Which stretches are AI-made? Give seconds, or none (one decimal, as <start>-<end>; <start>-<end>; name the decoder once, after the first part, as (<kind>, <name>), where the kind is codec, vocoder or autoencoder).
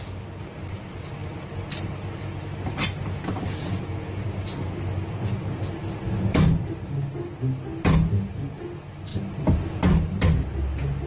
none